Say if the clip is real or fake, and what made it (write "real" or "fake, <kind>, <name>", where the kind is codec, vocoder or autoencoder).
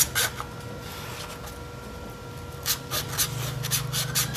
real